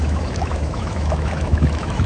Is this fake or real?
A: fake